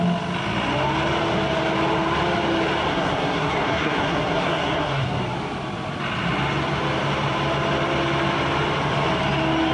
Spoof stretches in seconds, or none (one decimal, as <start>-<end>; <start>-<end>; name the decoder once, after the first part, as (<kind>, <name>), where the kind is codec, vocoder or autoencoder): 2.9-5.2 (codec, SNAC)